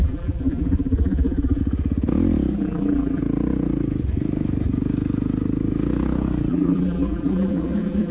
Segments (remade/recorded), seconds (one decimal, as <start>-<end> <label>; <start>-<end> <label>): 0.0-1.6 remade; 1.6-2.5 recorded; 2.5-3.2 remade; 3.2-6.5 recorded; 6.5-8.1 remade

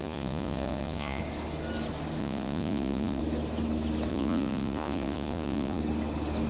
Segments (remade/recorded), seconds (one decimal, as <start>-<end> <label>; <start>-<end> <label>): 0.0-1.2 remade; 1.2-2.2 recorded; 2.2-3.2 remade; 3.2-4.1 recorded; 4.1-5.8 remade; 5.8-6.5 recorded